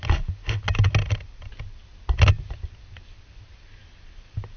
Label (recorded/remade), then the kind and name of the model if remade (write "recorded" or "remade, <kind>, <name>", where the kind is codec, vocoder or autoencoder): recorded